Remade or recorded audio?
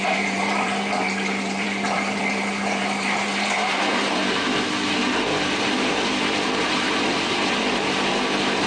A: remade